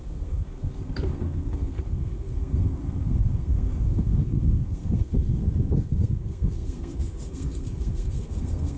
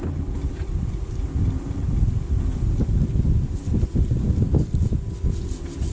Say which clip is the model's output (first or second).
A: first